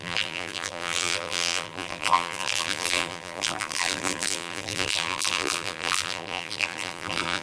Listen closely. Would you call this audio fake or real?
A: fake